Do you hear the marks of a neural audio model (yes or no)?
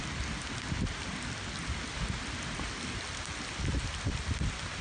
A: no